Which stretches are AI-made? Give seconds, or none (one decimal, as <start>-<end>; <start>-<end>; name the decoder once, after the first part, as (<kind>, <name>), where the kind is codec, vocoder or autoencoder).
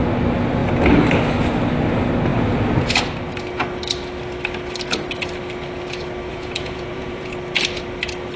6.3-7.3 (vocoder, Vocos)